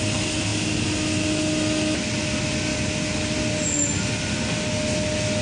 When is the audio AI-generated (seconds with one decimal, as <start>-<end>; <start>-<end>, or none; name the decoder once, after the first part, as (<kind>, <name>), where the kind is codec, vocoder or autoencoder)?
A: 2.7-3.4 (vocoder, BigVGAN v2)